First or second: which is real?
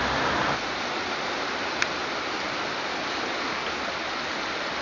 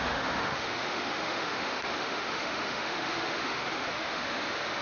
first